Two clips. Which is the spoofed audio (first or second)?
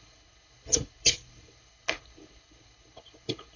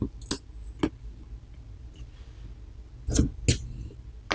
first